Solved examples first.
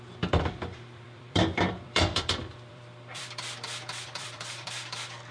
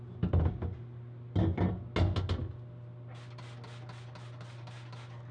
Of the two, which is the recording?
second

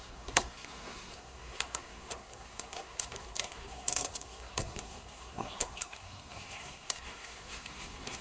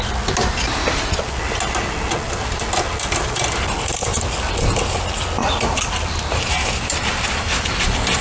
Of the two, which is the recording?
second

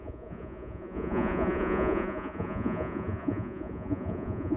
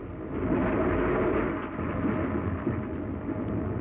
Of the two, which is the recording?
second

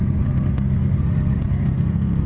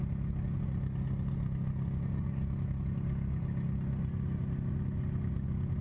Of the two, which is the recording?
second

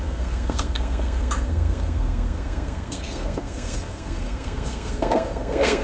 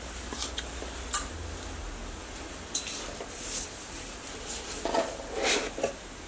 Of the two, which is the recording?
second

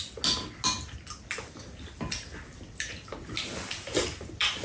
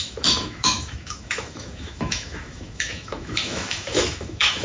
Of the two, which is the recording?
first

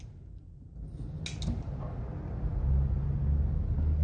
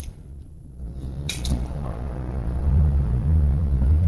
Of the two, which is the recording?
first